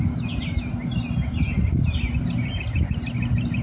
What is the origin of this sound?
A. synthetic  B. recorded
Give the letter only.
B